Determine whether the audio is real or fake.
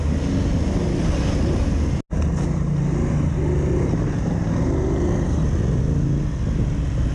real